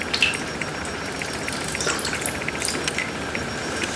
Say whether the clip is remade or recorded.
recorded